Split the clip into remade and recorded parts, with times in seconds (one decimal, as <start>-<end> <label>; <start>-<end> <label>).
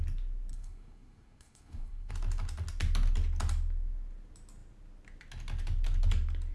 0.0-0.5 recorded; 0.5-2.1 remade; 2.1-6.5 recorded